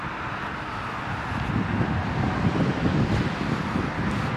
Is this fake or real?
real